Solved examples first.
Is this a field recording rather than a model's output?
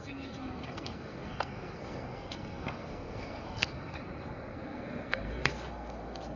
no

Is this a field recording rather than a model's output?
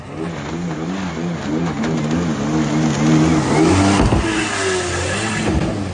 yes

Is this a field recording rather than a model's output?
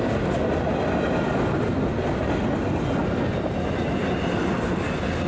yes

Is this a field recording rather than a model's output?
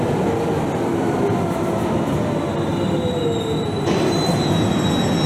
yes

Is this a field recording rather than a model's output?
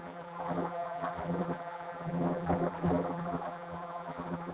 no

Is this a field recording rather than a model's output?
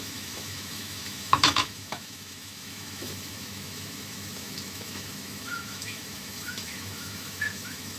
no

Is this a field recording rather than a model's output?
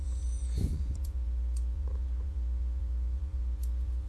no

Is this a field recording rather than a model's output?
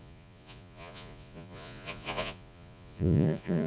no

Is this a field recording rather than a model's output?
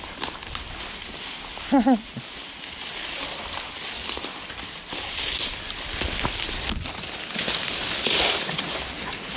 yes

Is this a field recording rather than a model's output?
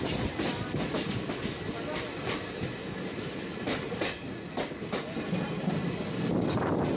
yes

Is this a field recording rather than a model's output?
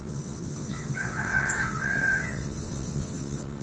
no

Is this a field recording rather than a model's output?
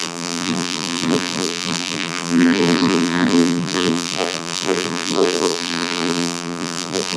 no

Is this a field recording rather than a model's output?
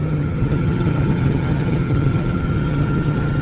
no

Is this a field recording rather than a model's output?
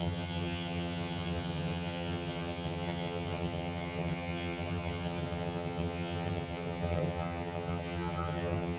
no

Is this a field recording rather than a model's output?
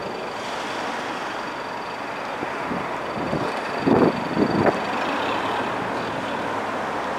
yes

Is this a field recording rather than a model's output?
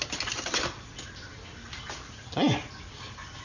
yes